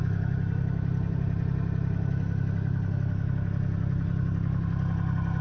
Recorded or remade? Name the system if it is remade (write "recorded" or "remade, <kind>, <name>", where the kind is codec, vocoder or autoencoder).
recorded